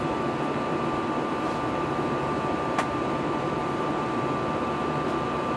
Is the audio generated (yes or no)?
yes